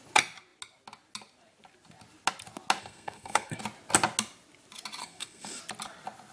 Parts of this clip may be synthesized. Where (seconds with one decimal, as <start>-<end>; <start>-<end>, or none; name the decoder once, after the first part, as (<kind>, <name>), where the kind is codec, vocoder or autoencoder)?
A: 2.8-3.6 (codec, SNAC); 5.0-5.6